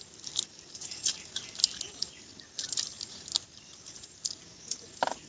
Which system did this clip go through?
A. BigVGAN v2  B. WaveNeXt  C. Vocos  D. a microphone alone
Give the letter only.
D